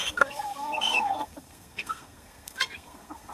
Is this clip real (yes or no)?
no